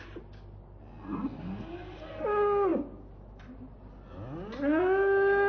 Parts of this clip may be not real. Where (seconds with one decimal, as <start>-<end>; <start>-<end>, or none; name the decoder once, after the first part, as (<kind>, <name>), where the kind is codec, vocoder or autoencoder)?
none